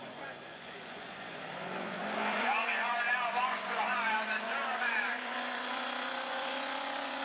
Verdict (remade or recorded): remade